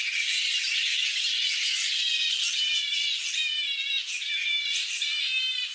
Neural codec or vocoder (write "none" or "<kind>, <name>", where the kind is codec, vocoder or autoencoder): none